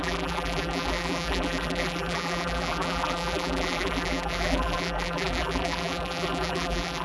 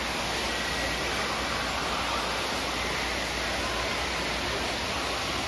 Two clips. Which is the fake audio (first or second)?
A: first